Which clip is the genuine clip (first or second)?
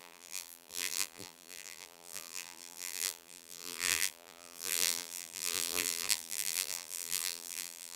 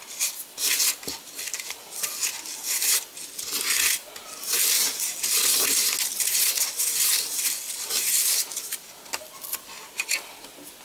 second